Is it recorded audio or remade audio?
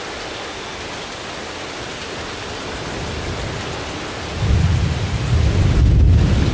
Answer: recorded